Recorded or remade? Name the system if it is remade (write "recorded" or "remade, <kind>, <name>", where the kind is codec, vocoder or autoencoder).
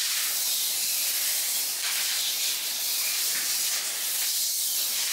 recorded